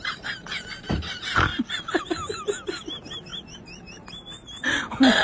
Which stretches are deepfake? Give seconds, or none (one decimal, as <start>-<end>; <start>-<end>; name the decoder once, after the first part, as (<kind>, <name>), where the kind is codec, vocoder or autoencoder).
1.5-2.0 (vocoder, BigVGAN v2); 3.3-5.2

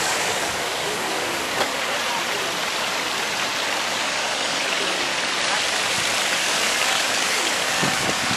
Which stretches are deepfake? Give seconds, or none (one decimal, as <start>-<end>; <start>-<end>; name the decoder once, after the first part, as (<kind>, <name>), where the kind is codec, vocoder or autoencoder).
0.0-1.7 (codec, DAC); 3.9-5.1; 6.3-8.4

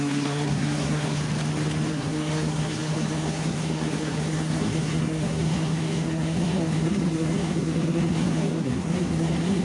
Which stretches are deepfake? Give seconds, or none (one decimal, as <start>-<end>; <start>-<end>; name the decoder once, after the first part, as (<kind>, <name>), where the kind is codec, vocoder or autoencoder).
0.0-1.2 (codec, SNAC); 1.9-9.6

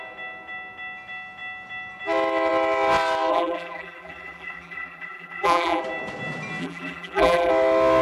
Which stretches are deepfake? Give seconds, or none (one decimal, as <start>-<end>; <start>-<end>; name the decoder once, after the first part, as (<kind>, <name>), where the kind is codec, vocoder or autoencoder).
3.3-5.8 (vocoder, BigVGAN v2); 6.6-7.5

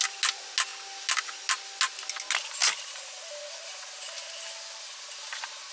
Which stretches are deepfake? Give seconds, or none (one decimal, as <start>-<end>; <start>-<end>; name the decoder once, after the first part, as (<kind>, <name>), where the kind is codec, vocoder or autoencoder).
2.6-3.3 (vocoder, BigVGAN v2)

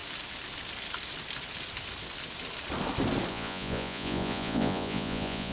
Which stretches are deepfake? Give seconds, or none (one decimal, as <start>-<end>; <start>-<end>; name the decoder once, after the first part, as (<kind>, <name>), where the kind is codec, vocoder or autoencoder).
3.3-5.5 (vocoder, Vocos)

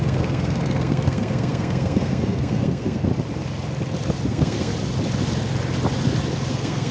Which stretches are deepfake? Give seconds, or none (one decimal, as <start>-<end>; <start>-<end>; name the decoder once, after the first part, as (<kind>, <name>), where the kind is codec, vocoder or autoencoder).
0.0-3.1 (codec, SNAC); 4.3-4.7; 6.5-6.9